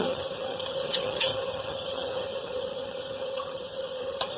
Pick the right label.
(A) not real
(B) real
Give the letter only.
A